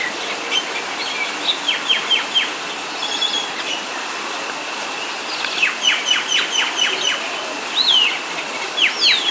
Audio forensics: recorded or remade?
recorded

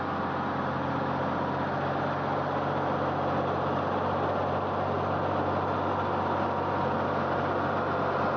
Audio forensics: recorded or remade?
recorded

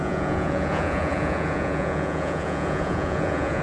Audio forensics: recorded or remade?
remade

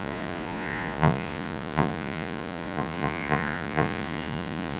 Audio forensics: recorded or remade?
remade